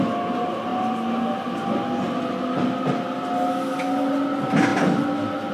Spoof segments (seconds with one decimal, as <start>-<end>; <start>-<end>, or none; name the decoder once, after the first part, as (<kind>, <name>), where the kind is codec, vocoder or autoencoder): none